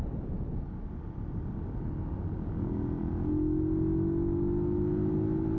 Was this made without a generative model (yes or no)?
yes